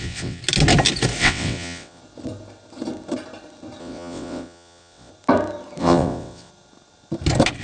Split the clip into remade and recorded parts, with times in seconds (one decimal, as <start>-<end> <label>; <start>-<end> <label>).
0.0-0.4 remade; 0.4-1.2 recorded; 1.2-2.0 remade; 2.0-3.8 recorded; 3.8-5.1 remade; 5.1-5.8 recorded; 5.8-6.5 remade; 6.5-7.6 recorded